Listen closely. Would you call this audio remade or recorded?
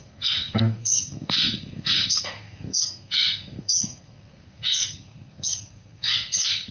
remade